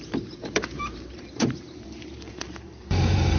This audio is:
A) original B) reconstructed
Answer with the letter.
B